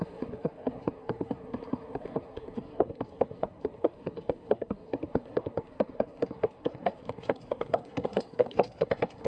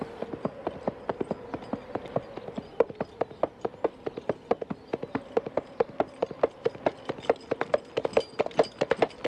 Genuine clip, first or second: second